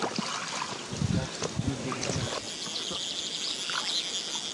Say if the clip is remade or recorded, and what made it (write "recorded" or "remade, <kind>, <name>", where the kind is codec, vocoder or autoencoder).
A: recorded